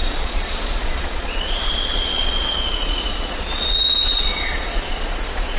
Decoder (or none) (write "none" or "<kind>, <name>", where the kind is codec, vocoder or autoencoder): vocoder, Vocos